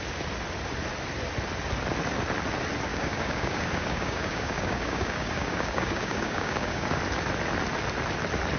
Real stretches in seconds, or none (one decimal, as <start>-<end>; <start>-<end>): 0.0-2.9; 7.0-8.6